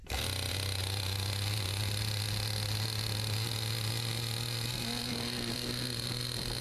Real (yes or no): yes